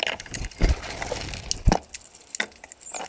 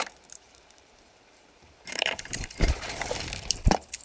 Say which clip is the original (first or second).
first